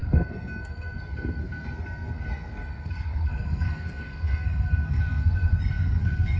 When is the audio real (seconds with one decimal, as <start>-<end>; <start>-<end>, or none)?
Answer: none